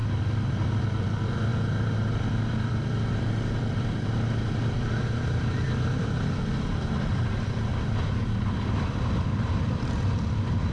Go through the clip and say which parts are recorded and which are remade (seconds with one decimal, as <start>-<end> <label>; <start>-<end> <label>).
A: 0.0-0.5 recorded; 0.5-10.7 remade